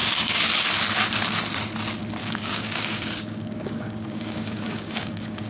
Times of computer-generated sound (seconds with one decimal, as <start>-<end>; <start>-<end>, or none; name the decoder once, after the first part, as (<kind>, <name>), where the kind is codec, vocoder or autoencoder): 0.0-0.5 (codec, DAC); 2.2-5.5